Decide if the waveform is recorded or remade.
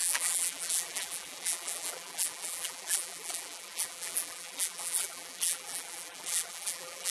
remade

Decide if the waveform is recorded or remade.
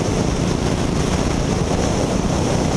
recorded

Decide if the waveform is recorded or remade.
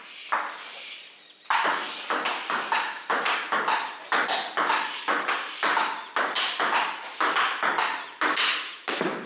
recorded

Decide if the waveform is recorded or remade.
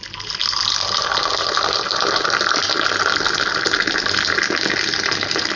recorded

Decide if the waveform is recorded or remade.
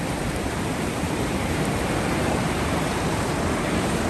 remade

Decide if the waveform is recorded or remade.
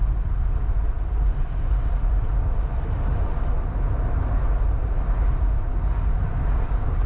recorded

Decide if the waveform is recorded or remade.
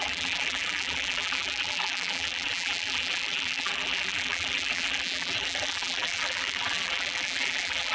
remade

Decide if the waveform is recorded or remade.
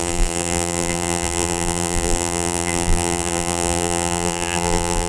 remade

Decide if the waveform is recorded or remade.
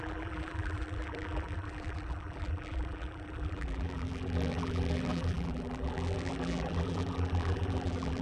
remade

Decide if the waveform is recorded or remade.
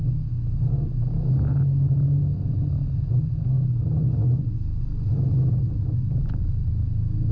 recorded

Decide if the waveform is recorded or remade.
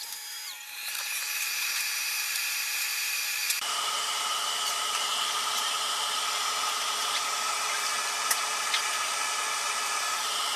remade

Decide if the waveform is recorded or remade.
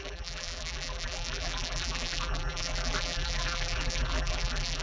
remade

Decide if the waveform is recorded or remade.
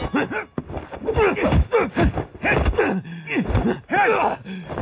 recorded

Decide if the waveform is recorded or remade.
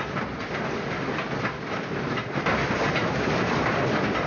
remade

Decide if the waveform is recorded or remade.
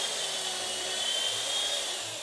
remade